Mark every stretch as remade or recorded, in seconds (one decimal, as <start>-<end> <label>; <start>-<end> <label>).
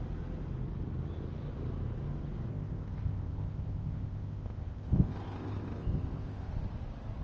0.0-2.5 recorded; 2.5-6.5 remade; 6.5-7.2 recorded